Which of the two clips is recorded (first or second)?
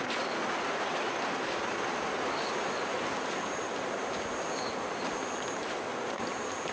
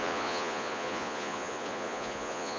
first